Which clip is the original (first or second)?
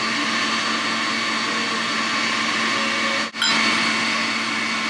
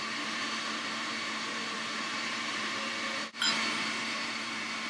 first